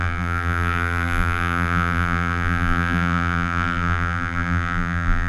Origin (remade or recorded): remade